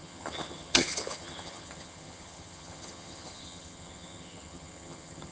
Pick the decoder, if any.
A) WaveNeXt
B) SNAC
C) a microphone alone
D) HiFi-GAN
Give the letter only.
D